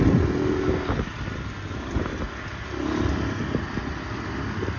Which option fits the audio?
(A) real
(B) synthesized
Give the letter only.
A